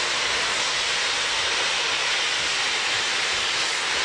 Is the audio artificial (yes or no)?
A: no